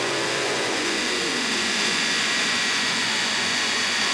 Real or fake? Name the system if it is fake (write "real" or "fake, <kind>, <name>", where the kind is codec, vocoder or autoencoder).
fake, vocoder, Vocos